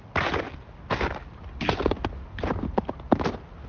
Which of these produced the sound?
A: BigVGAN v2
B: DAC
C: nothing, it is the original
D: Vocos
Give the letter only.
C